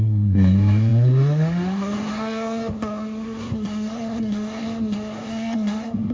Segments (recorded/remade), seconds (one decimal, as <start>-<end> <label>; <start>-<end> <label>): 0.0-6.1 remade